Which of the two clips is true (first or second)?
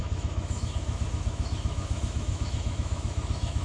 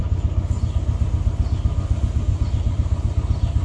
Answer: second